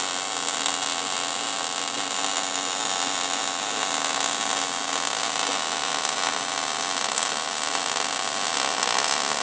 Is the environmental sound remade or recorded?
recorded